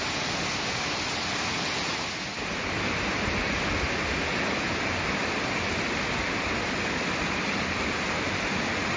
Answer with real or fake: real